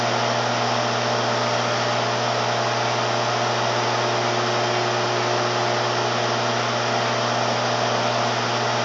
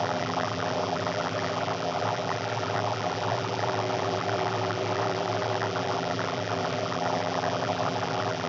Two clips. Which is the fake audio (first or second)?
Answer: second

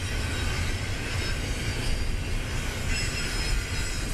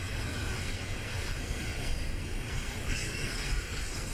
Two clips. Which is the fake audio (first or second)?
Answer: second